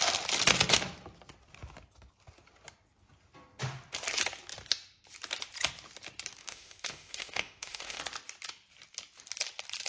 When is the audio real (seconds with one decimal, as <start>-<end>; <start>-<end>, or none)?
0.0-6.4; 8.0-9.9